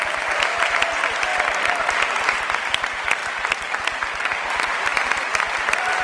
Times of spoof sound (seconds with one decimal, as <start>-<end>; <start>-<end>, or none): none